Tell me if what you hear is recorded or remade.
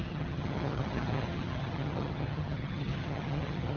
remade